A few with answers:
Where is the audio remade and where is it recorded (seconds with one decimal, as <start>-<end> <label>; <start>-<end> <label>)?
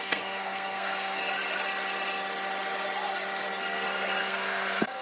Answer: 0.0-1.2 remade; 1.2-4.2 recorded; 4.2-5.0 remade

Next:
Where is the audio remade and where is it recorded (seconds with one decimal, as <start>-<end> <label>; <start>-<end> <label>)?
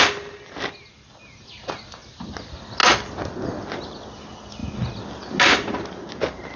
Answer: 0.0-6.6 recorded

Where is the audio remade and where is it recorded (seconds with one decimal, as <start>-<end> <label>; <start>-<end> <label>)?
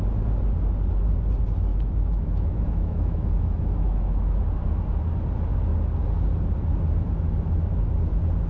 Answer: 0.0-1.7 recorded; 1.7-4.4 remade; 4.4-8.5 recorded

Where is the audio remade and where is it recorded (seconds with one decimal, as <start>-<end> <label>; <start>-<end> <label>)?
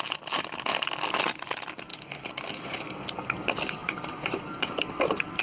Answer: 0.0-5.4 recorded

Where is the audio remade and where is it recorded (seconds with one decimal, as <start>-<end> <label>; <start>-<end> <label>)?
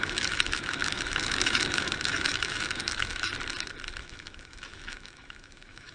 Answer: 0.0-3.3 remade; 3.3-4.0 recorded; 4.0-5.9 remade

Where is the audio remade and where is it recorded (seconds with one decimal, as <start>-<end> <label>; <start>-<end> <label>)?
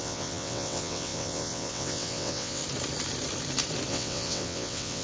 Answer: 0.0-2.6 remade; 2.6-3.9 recorded; 3.9-5.0 remade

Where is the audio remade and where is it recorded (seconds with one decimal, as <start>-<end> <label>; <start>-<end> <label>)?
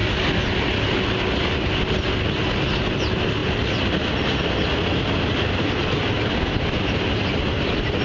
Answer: 0.0-8.0 recorded